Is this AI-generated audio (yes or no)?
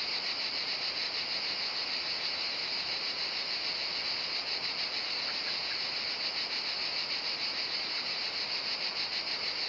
no